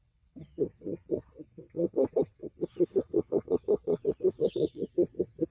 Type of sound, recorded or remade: remade